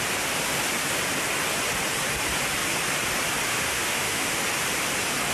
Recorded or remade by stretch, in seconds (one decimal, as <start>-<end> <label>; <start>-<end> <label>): 0.0-3.5 recorded; 3.5-4.4 remade; 4.4-5.3 recorded